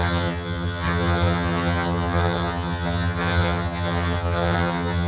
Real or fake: fake